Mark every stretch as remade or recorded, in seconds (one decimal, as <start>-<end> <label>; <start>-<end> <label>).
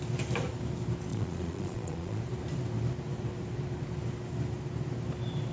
0.0-1.1 recorded; 1.1-2.2 remade; 2.2-5.5 recorded